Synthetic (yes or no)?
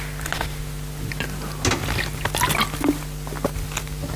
no